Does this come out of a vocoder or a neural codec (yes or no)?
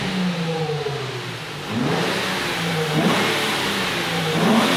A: no